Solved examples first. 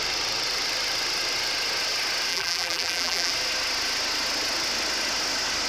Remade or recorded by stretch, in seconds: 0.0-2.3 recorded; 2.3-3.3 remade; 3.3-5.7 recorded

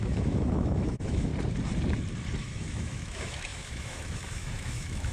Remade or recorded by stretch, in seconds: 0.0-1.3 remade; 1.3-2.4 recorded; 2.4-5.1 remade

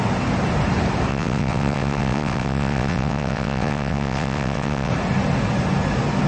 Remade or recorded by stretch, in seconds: 0.0-1.1 recorded; 1.1-4.9 remade; 4.9-6.3 recorded

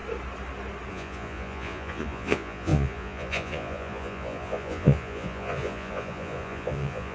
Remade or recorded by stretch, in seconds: 0.0-0.9 recorded; 0.9-7.1 remade

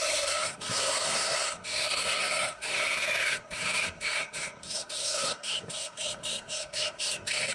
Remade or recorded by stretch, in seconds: 0.0-7.5 remade